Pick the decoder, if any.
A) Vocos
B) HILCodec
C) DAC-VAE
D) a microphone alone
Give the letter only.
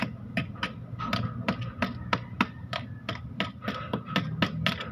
D